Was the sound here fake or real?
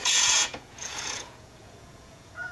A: fake